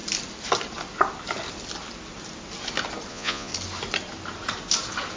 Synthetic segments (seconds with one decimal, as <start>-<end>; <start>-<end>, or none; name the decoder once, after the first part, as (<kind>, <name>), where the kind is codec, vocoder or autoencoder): 3.1-3.5 (vocoder, Vocos)